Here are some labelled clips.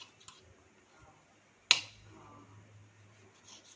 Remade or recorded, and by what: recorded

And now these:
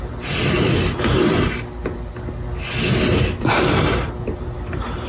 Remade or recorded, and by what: recorded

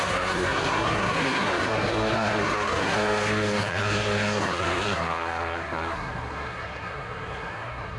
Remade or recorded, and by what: remade, codec, SNAC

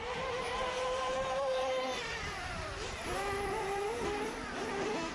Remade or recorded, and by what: remade, vocoder, BigVGAN v2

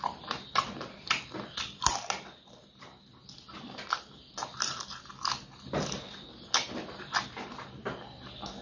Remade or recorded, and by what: recorded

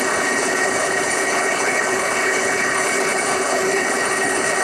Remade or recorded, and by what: remade, codec, HILCodec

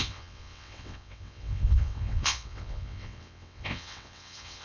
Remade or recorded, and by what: remade, vocoder, WaveNeXt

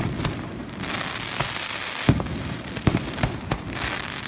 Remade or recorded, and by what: remade, vocoder, BigVGAN v2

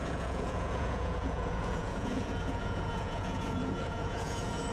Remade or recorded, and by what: remade, vocoder, Vocos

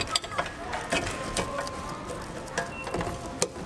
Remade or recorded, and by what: recorded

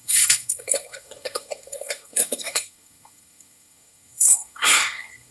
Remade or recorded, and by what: remade, codec, SNAC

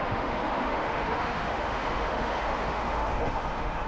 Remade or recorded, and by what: remade, autoencoder, DAC-VAE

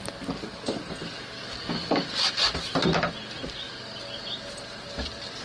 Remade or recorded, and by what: recorded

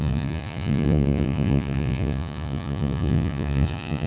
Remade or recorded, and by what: remade, vocoder, Vocos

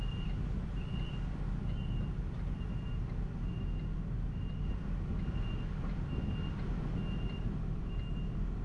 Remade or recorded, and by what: recorded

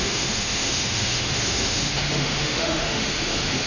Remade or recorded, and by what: remade, autoencoder, DAC-VAE